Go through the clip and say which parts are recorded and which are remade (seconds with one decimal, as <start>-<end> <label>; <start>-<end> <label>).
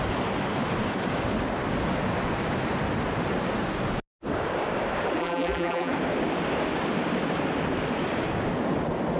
0.0-5.2 recorded; 5.2-5.9 remade; 5.9-9.2 recorded